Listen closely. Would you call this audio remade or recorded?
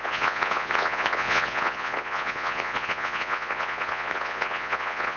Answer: remade